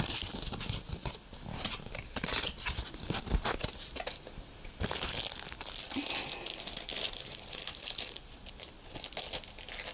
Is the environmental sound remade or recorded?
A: recorded